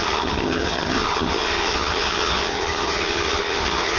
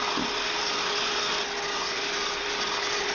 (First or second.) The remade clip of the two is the first